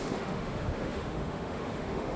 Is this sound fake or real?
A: fake